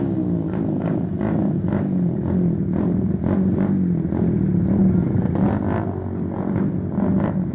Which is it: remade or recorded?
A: recorded